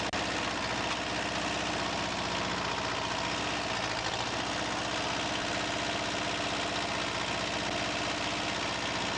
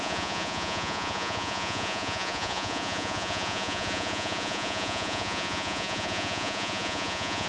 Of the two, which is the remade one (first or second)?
second